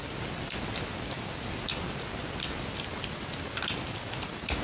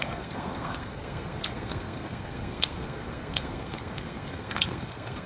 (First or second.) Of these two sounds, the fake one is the second